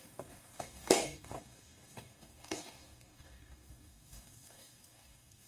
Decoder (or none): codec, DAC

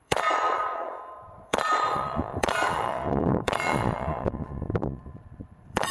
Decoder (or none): vocoder, Vocos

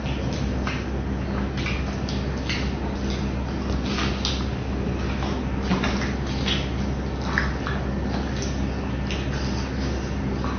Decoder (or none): none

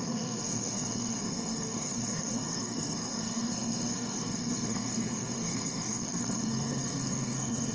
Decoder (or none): codec, SNAC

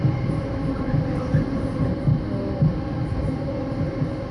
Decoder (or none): none